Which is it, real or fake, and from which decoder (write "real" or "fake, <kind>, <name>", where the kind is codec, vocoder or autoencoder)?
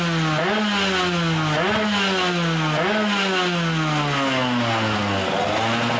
real